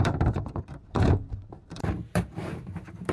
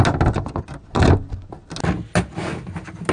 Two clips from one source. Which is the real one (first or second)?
second